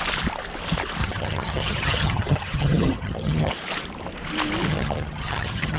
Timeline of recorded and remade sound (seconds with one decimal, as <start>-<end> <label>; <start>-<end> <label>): 0.0-1.0 recorded; 1.0-3.5 remade; 3.5-4.7 recorded; 4.7-5.8 remade